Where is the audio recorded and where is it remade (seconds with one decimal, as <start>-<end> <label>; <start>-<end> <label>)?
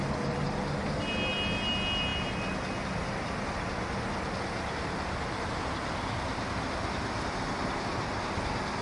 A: 0.0-8.8 recorded